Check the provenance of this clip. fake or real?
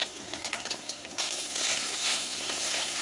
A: fake